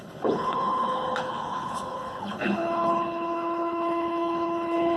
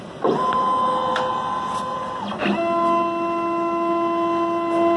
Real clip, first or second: second